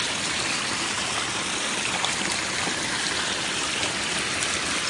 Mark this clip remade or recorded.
recorded